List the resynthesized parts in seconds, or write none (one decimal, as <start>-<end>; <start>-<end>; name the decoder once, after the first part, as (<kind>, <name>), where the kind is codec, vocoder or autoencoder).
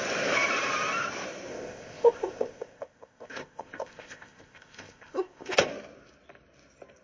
1.5-5.7 (codec, ZipCodec)